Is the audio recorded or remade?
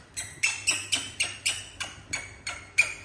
remade